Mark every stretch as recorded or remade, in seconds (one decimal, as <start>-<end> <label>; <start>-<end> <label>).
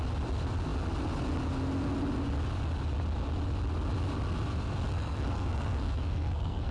0.0-4.9 recorded; 4.9-6.7 remade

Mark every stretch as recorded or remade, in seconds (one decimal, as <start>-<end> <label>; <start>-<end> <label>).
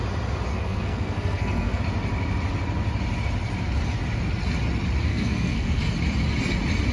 0.0-0.5 recorded; 0.5-1.8 remade; 1.8-5.1 recorded; 5.1-5.8 remade; 5.8-6.9 recorded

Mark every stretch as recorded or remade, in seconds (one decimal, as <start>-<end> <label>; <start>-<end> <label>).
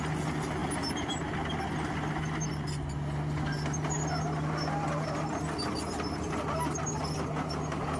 0.0-8.0 recorded